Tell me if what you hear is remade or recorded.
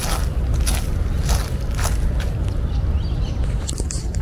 recorded